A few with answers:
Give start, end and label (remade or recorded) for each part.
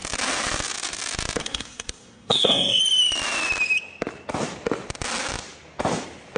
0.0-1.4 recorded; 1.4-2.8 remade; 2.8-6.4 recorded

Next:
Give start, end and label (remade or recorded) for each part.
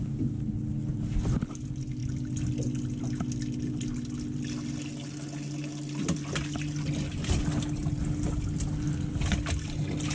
0.0-10.1 recorded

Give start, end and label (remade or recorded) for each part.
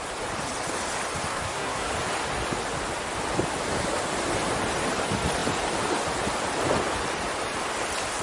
0.0-1.3 recorded; 1.3-1.9 remade; 1.9-8.2 recorded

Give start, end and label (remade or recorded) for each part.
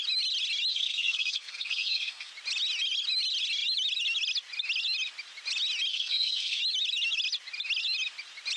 0.0-0.7 recorded; 0.7-2.3 remade; 2.3-5.9 recorded; 5.9-6.6 remade; 6.6-8.6 recorded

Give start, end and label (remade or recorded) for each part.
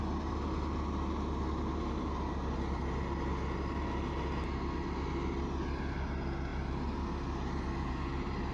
0.0-8.5 recorded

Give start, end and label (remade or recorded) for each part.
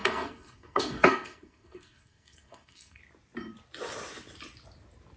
0.0-3.0 remade; 3.0-5.2 recorded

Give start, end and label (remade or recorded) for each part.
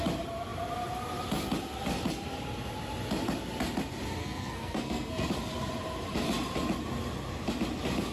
0.0-4.2 recorded; 4.2-5.3 remade; 5.3-8.1 recorded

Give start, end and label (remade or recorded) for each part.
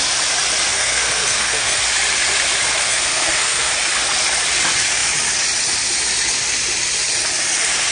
0.0-0.7 recorded; 0.7-1.8 remade; 1.8-2.8 recorded; 2.8-3.7 remade; 3.7-7.9 recorded